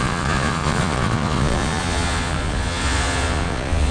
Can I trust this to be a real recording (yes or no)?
no